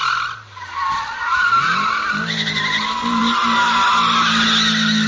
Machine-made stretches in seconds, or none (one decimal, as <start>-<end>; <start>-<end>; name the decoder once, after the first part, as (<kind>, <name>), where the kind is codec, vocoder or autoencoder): none